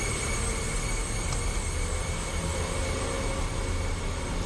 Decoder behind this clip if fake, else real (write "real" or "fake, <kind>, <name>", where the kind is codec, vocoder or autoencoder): real